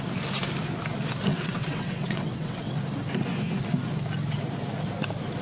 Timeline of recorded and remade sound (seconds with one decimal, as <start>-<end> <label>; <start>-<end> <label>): 0.0-1.3 recorded; 1.3-2.8 remade; 2.8-5.4 recorded